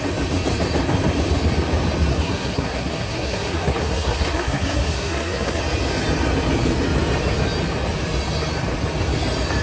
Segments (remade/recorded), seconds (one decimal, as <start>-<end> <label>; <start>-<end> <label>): 0.0-2.1 recorded; 2.1-5.6 remade; 5.6-9.6 recorded